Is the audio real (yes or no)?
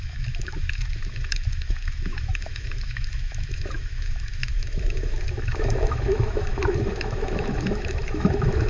no